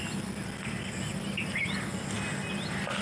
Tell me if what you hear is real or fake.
real